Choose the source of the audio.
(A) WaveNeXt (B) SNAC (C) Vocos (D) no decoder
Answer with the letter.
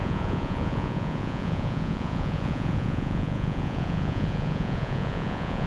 C